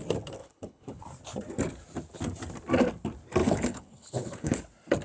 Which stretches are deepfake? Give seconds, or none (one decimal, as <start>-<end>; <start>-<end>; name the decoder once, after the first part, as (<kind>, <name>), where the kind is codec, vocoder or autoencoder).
0.4-1.0 (codec, HILCodec); 3.4-4.6